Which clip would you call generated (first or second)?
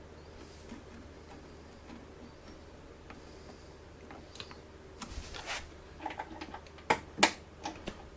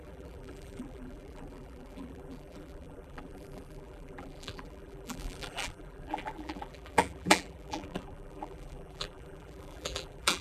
second